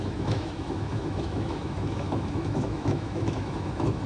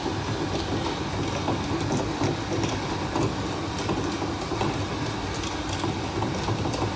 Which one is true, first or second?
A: second